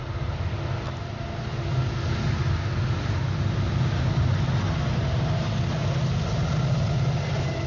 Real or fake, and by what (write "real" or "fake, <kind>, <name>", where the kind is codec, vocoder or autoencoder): real